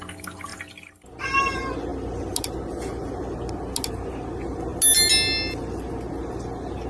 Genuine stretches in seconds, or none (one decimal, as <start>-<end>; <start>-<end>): 0.0-6.9